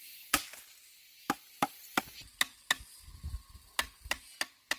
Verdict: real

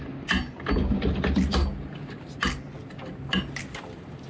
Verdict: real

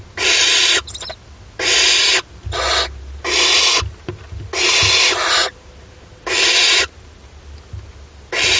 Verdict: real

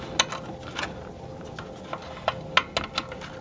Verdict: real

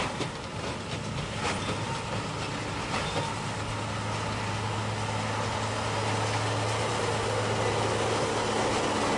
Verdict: real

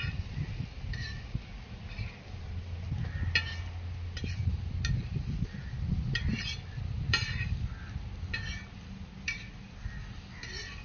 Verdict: real